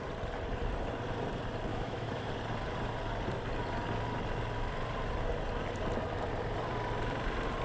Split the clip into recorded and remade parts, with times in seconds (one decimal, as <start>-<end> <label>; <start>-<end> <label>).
0.0-1.7 recorded; 1.7-2.3 remade; 2.3-7.6 recorded